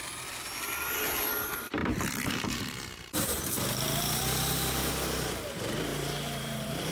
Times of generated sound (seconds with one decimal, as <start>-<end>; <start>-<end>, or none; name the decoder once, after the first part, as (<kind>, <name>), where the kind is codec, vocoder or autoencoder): 1.8-4.2 (vocoder, BigVGAN v2); 5.9-6.9